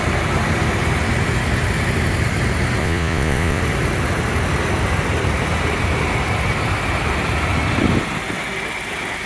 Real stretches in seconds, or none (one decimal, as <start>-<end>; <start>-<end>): 0.0-2.8; 3.6-9.3